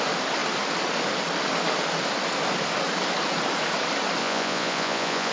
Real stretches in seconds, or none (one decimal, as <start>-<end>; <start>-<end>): 0.0-4.2